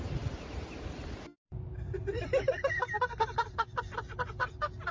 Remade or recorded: recorded